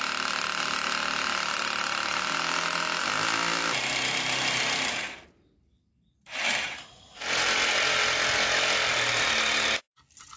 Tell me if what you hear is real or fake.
real